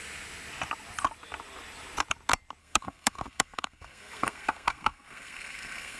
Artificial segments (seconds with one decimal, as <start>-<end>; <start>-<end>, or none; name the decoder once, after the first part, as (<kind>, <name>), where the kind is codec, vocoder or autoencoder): 2.6-6.0 (codec, SNAC)